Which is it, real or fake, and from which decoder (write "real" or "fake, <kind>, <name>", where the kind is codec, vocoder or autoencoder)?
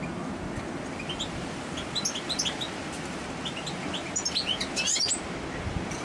real